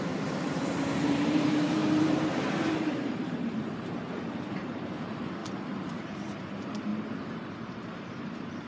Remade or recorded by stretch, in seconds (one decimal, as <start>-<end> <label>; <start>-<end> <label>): 0.0-5.4 remade; 5.4-5.9 recorded; 5.9-6.9 remade; 6.9-8.0 recorded; 8.0-8.7 remade